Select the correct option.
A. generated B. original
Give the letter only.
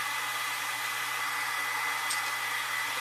B